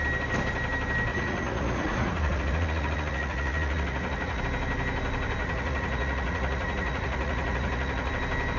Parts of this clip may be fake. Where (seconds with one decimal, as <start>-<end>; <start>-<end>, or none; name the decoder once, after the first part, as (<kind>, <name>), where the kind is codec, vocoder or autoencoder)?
1.1-4.4 (vocoder, Vocos); 5.4-8.1